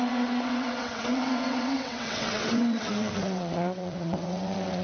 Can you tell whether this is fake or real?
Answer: fake